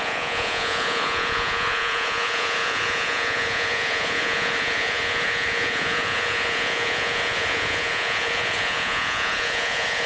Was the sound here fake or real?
fake